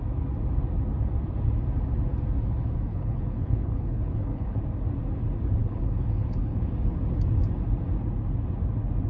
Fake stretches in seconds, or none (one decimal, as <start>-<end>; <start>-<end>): 2.9-4.6; 5.6-6.7